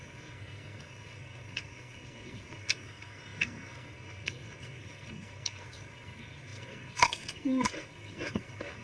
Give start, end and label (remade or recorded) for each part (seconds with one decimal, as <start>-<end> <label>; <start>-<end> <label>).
0.0-8.8 remade